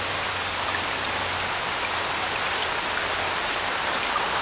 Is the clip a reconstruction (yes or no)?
no